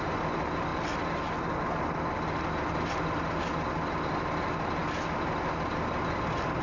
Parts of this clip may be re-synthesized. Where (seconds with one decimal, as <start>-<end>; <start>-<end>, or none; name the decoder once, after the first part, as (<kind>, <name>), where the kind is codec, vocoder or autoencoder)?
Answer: none

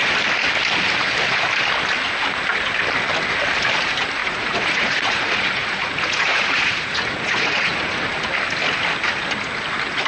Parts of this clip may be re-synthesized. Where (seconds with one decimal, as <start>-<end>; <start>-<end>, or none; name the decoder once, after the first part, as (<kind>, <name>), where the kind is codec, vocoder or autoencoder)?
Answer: 4.2-8.1 (vocoder, Vocos)

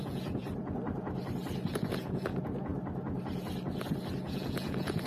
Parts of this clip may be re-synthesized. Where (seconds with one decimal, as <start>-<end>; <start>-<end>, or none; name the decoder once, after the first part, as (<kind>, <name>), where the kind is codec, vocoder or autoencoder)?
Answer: 0.0-0.4 (vocoder, Vocos); 1.7-2.7; 4.2-5.1

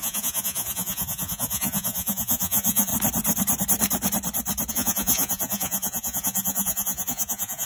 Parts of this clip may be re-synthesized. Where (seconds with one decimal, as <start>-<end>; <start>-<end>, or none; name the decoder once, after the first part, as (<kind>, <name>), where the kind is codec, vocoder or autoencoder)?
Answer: 0.0-2.9 (vocoder, Vocos); 4.7-7.7

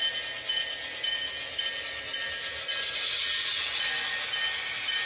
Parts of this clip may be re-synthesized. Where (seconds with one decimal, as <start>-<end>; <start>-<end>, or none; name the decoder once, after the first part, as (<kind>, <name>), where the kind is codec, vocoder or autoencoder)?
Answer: 3.4-4.2 (vocoder, Vocos)